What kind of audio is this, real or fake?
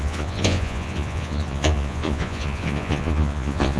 fake